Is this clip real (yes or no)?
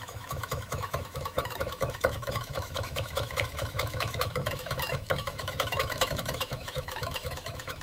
no